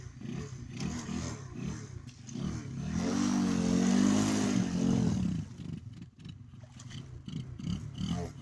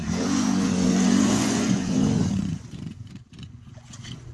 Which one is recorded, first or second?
first